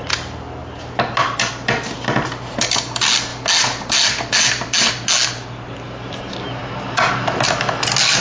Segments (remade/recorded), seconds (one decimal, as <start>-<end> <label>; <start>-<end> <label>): 0.0-0.6 recorded; 0.6-1.5 remade; 1.5-8.2 recorded